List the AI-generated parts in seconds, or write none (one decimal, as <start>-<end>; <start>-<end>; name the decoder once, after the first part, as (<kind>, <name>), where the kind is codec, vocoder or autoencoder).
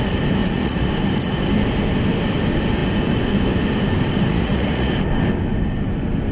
0.4-0.9 (vocoder, Vocos); 4.3-4.9